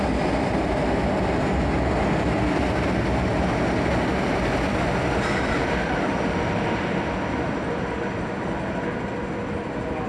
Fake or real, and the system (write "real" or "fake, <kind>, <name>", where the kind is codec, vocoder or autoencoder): real